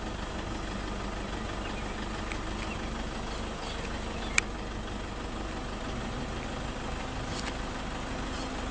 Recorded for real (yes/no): yes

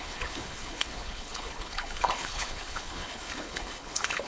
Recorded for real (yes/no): no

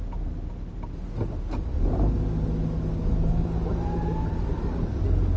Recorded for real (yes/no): yes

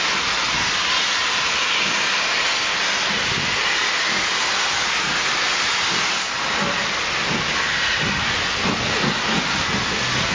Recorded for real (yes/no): yes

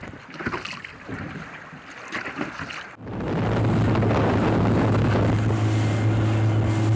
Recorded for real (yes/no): yes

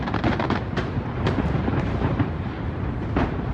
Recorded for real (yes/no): no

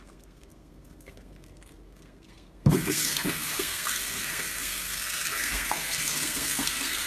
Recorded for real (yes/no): no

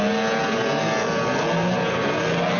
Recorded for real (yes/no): yes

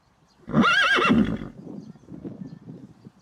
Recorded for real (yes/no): yes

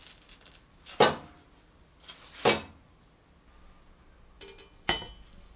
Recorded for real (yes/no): yes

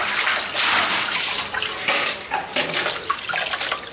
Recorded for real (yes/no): yes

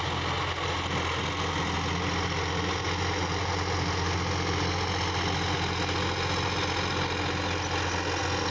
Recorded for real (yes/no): yes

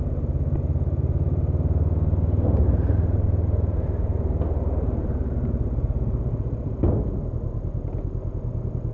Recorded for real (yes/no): yes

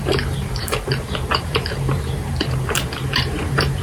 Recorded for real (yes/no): no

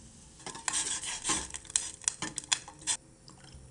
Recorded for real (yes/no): yes